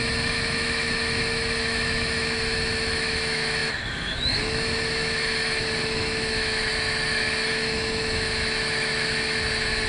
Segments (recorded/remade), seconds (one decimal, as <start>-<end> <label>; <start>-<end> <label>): 0.0-9.9 remade